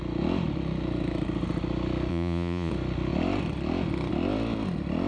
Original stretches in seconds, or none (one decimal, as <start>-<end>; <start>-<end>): 0.0-2.1; 2.7-5.1